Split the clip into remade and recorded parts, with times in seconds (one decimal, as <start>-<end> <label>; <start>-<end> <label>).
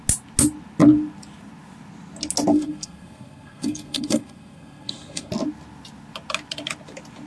0.0-2.5 recorded; 2.5-5.3 remade; 5.3-7.3 recorded